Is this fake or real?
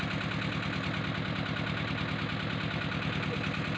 real